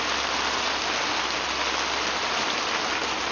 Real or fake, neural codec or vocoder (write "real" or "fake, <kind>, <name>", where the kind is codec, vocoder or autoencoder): real